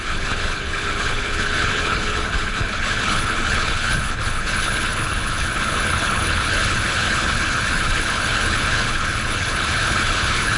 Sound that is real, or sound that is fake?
fake